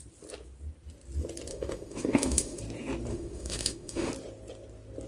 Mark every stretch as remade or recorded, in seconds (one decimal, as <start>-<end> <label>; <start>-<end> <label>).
0.0-1.5 recorded; 1.5-2.6 remade; 2.6-3.1 recorded; 3.1-4.1 remade; 4.1-5.1 recorded